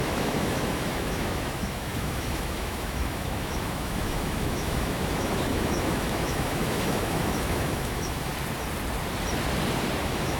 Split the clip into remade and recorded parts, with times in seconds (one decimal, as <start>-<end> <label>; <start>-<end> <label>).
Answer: 0.0-8.3 remade; 8.3-10.0 recorded; 10.0-10.4 remade